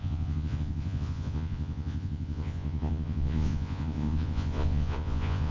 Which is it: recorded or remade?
remade